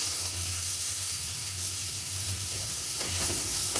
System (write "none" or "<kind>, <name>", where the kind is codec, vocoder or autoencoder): codec, SNAC